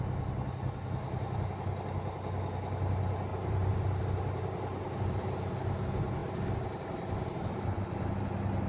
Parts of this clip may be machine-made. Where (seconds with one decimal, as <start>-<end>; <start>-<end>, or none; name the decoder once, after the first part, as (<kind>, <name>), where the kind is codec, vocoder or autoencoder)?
1.0-1.5 (vocoder, BigVGAN v2); 3.3-4.0; 6.2-8.1